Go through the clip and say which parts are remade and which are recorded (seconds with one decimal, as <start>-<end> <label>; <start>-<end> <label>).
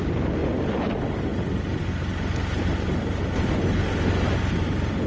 0.0-5.1 recorded